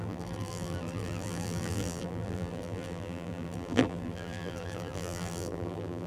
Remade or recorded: remade